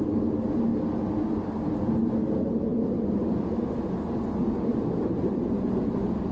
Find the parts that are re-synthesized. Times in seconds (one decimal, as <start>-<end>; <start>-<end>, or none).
2.7-4.2; 4.7-5.7